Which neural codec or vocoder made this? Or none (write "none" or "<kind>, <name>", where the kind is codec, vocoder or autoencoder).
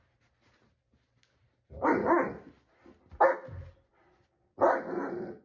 none